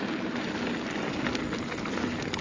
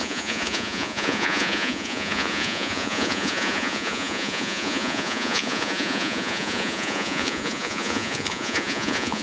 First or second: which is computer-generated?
second